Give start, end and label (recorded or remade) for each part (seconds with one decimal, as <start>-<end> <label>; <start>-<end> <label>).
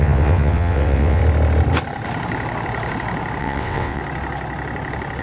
0.0-1.2 remade; 1.2-3.4 recorded; 3.4-4.0 remade; 4.0-5.2 recorded